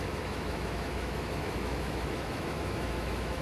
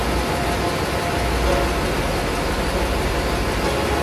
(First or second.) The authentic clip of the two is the second